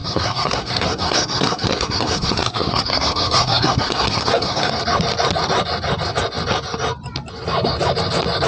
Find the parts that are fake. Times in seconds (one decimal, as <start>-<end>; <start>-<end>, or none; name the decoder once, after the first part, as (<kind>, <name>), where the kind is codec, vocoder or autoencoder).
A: 0.0-4.7 (codec, SNAC)